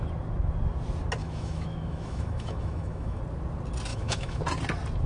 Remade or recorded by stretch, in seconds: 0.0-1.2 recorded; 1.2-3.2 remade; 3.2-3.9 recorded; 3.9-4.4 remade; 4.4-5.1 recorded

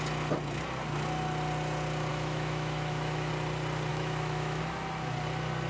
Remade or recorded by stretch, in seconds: 0.0-2.1 recorded; 2.1-3.3 remade; 3.3-3.9 recorded; 3.9-4.6 remade; 4.6-5.7 recorded

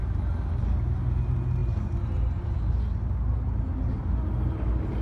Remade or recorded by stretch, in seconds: 0.0-5.0 recorded

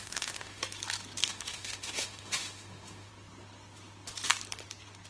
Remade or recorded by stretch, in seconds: 0.0-0.6 remade; 0.6-1.2 recorded; 1.2-3.1 remade; 3.1-5.1 recorded

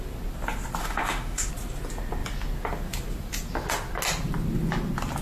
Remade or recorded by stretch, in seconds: 0.0-0.8 recorded; 0.8-1.5 remade; 1.5-5.2 recorded

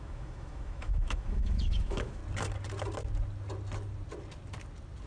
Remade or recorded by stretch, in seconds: 0.0-2.2 remade; 2.2-5.1 recorded

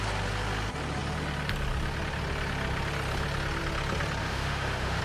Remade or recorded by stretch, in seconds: 0.0-4.2 recorded; 4.2-5.0 remade

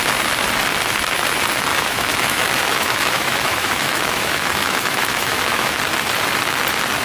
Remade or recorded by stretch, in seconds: 0.0-1.7 recorded; 1.7-5.8 remade; 5.8-7.0 recorded